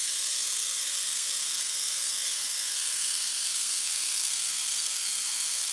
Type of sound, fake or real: fake